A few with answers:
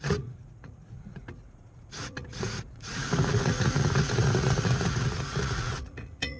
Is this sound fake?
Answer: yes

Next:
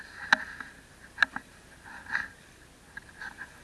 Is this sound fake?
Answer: no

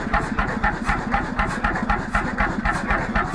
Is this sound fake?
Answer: no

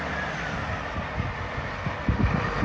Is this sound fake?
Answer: no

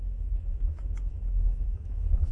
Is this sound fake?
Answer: yes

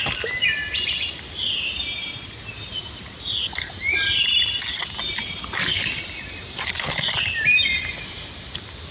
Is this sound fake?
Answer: no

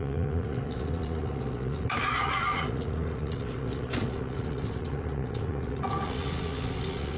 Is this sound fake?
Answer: yes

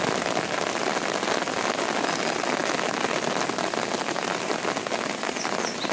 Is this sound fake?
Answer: no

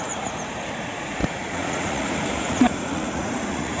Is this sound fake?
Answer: yes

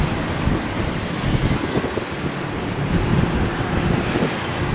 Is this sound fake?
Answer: no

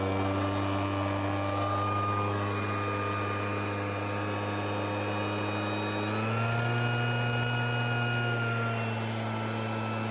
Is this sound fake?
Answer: no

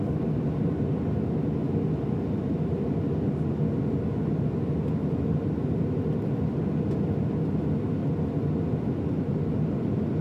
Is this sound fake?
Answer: no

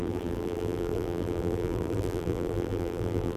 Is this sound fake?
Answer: yes